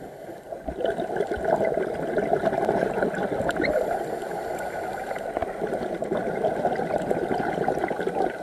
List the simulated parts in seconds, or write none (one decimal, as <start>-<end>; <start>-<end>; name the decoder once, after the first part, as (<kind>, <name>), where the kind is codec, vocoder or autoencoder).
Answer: none